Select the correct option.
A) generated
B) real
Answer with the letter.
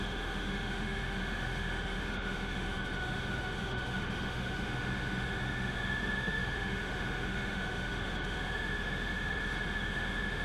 A